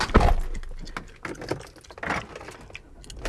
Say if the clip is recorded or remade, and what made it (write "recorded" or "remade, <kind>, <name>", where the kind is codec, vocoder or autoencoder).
recorded